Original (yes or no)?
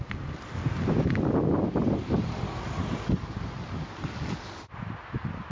yes